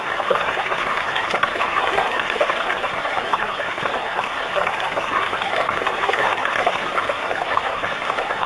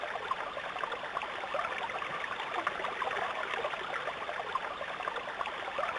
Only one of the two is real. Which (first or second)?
second